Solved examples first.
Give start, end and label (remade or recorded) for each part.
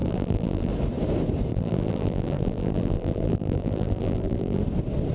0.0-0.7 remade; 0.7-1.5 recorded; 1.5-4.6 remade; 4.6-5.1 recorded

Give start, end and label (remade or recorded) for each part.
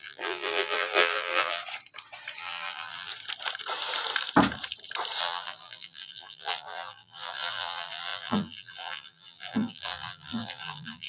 0.0-1.6 remade; 1.6-2.4 recorded; 2.4-3.1 remade; 3.1-5.2 recorded; 5.2-11.1 remade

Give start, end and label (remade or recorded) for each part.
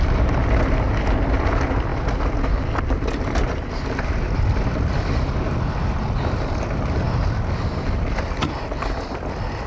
0.0-9.7 recorded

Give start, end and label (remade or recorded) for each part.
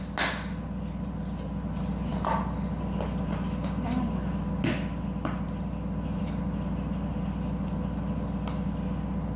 0.0-9.4 recorded